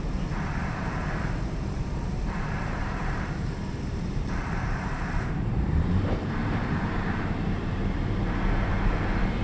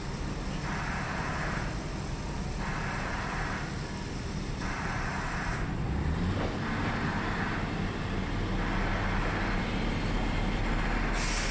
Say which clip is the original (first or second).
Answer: second